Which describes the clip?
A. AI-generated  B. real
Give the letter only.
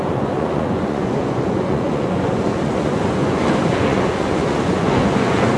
A